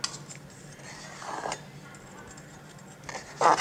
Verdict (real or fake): real